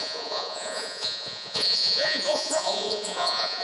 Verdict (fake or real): fake